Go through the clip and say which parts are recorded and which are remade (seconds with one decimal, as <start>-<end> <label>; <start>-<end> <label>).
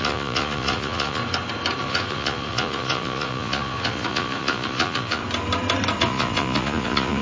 0.0-1.2 remade; 1.2-1.8 recorded; 1.8-5.2 remade; 5.2-6.0 recorded; 6.0-7.2 remade